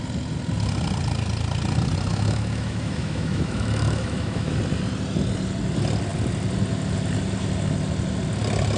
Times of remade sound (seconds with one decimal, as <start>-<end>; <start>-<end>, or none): 2.1-4.6